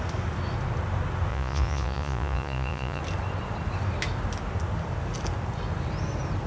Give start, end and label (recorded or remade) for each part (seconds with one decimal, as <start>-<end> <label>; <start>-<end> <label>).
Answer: 0.0-1.3 recorded; 1.3-3.0 remade; 3.0-6.5 recorded